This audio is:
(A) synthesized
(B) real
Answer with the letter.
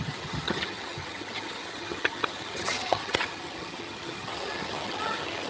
A